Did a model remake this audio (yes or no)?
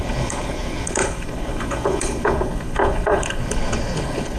yes